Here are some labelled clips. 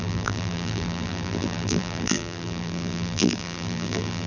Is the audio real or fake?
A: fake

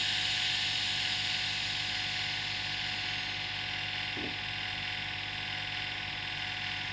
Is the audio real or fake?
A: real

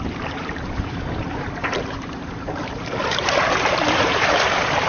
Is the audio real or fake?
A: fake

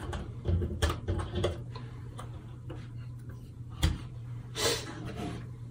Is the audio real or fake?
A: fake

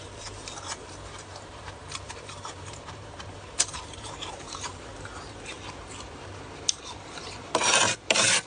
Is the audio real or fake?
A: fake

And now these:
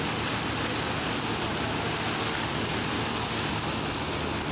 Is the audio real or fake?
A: real